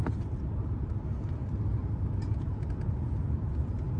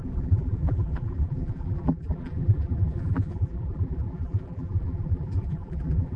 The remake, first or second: second